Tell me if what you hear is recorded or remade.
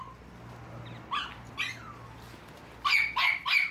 recorded